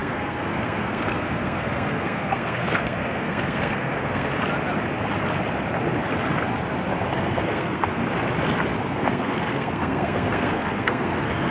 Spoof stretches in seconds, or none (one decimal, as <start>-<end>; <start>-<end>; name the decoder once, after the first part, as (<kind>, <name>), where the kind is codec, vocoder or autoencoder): 0.0-4.3 (codec, SNAC); 7.1-8.0; 8.8-11.5